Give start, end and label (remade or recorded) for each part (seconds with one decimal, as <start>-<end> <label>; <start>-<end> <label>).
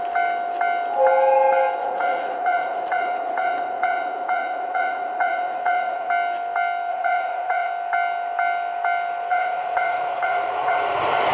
0.0-1.8 recorded; 1.8-6.1 remade; 6.1-6.9 recorded; 6.9-7.7 remade; 7.7-9.3 recorded; 9.3-10.8 remade; 10.8-11.3 recorded